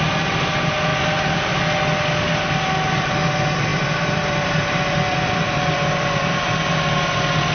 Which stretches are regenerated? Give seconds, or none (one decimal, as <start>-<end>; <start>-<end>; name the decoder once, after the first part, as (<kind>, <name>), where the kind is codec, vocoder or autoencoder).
0.9-1.6 (vocoder, BigVGAN v2); 3.7-6.5